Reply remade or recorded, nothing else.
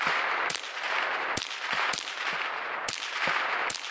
recorded